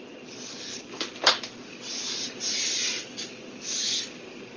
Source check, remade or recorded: recorded